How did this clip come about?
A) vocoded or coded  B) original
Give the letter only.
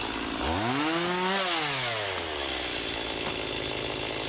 B